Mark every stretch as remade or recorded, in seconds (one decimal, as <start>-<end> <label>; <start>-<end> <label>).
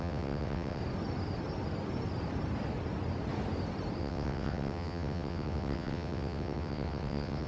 0.0-0.8 remade; 0.8-4.0 recorded; 4.0-7.5 remade